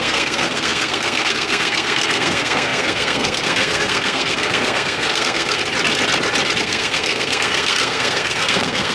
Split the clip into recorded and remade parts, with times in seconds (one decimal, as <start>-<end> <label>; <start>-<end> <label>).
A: 0.0-5.6 remade; 5.6-6.6 recorded; 6.6-8.9 remade